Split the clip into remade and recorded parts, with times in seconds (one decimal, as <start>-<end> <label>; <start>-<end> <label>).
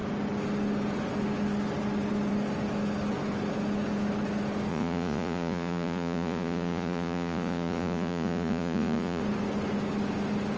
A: 0.0-4.7 recorded; 4.7-9.2 remade; 9.2-10.6 recorded